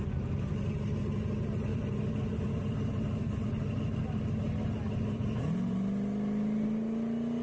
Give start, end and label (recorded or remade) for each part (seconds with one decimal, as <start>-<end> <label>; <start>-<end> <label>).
0.0-1.7 recorded; 1.7-2.9 remade; 2.9-7.4 recorded